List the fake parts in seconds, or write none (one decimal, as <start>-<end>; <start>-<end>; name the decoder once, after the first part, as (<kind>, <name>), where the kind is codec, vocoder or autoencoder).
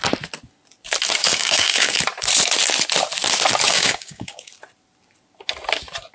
1.2-1.9 (codec, DAC); 3.7-4.5